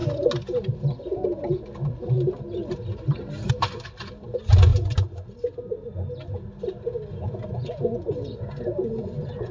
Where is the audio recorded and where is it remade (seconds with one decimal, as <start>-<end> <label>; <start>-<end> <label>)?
0.0-9.5 recorded